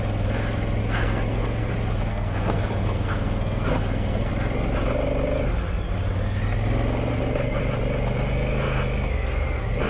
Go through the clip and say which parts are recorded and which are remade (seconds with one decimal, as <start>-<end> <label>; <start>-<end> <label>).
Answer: 0.0-0.8 recorded; 0.8-1.7 remade; 1.7-2.1 recorded; 2.1-4.3 remade; 4.3-7.1 recorded; 7.1-7.6 remade; 7.6-9.9 recorded